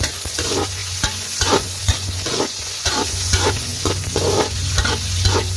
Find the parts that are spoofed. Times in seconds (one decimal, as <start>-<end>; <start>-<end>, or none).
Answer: 0.0-5.6